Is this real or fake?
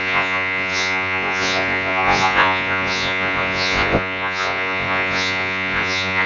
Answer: fake